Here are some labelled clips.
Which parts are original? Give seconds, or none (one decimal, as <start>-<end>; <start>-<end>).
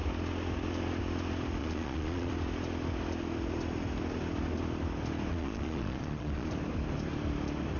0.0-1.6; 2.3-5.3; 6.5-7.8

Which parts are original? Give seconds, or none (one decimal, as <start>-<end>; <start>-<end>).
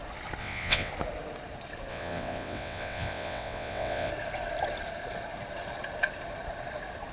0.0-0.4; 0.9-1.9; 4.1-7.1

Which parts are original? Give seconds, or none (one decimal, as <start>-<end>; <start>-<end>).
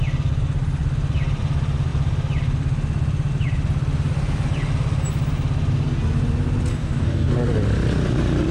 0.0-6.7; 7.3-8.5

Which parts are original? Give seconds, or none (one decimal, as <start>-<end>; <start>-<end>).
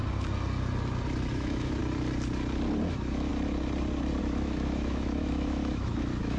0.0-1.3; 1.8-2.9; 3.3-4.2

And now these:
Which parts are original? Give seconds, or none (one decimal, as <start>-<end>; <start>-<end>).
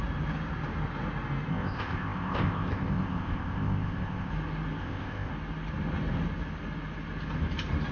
0.0-1.5; 4.3-4.8; 5.3-7.9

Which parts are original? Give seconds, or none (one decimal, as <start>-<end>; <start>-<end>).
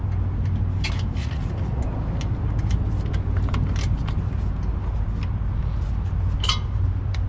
0.0-1.2; 1.8-7.3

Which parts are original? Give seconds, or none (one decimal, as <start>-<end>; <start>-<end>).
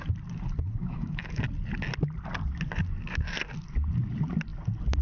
0.0-0.8; 1.4-5.0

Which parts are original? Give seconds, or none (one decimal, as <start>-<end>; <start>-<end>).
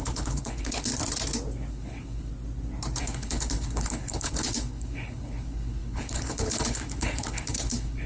0.9-1.7; 2.3-3.0